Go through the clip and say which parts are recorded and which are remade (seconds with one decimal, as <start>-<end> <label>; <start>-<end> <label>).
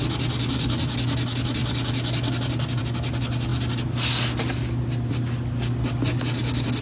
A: 0.0-6.8 recorded